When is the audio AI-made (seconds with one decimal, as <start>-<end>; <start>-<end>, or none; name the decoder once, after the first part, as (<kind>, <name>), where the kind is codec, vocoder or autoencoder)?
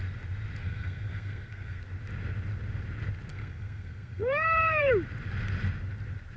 0.6-1.8 (codec, SNAC); 3.3-4.9